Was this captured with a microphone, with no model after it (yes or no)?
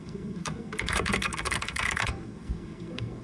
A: no